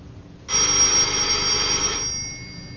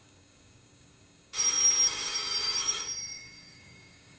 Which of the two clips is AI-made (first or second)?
second